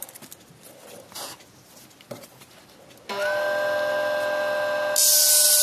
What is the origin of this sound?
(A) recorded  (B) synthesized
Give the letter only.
A